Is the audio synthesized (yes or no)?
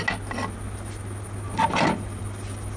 no